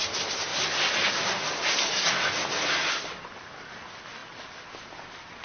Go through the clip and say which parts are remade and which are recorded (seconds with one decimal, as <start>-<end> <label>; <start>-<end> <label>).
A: 0.0-5.4 recorded